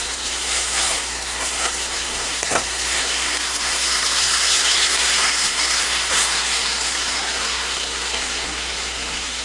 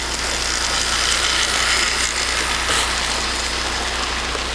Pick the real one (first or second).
second